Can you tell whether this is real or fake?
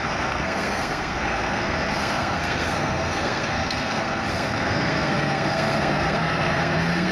fake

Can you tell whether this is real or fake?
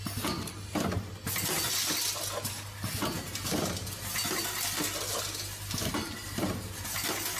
real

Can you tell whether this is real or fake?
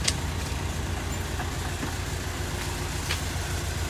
real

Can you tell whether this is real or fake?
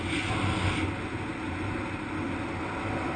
real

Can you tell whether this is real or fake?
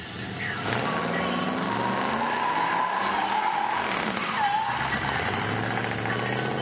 real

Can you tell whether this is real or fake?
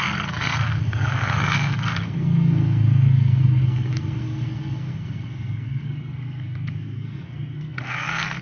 fake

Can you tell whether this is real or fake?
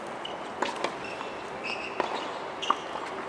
real